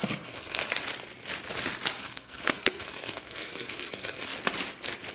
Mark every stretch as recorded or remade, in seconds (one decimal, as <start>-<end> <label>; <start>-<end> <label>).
0.0-0.6 remade; 0.6-2.0 recorded; 2.0-4.3 remade; 4.3-5.1 recorded